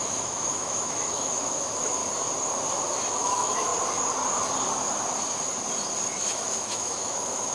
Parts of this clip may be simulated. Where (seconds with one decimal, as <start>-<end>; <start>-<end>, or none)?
0.0-2.0; 3.1-3.7; 6.1-7.5

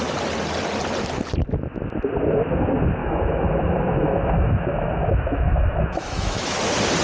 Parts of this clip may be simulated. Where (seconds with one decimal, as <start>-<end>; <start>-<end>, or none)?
3.0-6.6

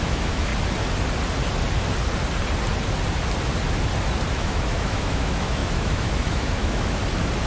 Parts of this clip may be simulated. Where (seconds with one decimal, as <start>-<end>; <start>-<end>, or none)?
0.0-0.5; 4.4-7.0

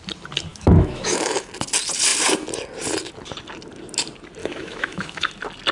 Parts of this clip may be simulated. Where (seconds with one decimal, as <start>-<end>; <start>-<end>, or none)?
0.5-1.5; 4.4-5.3